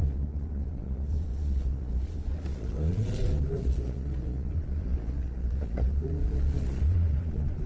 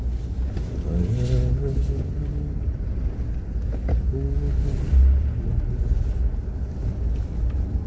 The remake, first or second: first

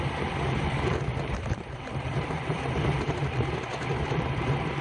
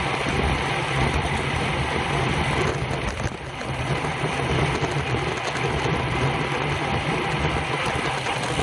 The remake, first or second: first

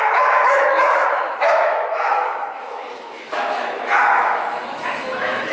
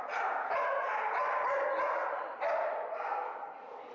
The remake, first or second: first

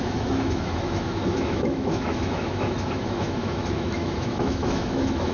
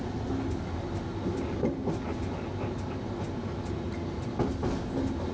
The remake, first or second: first